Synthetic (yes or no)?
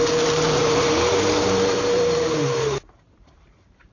yes